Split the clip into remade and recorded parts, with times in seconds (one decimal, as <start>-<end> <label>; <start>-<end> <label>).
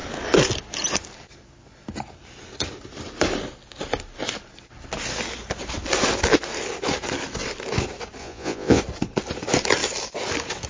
0.0-8.2 recorded; 8.2-8.8 remade; 8.8-10.7 recorded